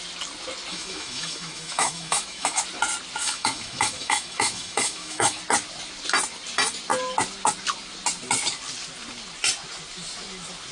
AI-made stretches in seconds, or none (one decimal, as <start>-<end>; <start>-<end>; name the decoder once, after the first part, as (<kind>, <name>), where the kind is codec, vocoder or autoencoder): 0.7-2.6 (autoencoder, DAC-VAE); 3.2-5.4